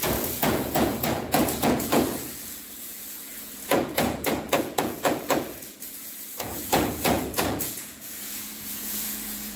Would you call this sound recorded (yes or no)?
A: no